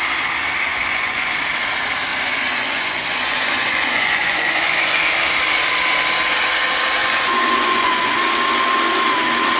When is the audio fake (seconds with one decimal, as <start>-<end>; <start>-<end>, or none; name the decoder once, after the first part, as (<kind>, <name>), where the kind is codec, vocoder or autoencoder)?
0.7-1.3 (vocoder, Vocos); 2.1-5.0; 7.0-8.2